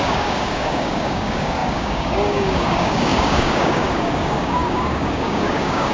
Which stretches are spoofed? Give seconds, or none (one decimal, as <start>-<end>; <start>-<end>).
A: 0.0-5.9